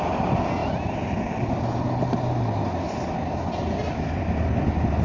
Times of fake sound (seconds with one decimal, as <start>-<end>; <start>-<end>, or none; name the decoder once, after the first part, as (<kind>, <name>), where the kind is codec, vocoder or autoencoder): none